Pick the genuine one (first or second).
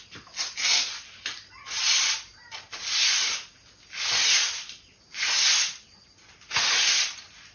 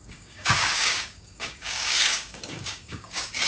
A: first